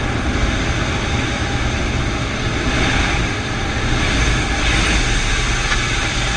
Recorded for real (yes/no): yes